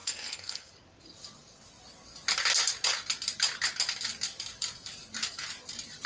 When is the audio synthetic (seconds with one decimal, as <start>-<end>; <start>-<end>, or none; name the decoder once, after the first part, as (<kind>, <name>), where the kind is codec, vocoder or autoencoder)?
0.0-0.7 (codec, SNAC)